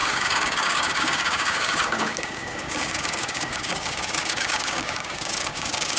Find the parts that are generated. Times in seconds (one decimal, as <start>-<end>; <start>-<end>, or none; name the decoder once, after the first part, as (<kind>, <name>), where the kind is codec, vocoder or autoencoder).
0.0-6.0 (codec, DAC)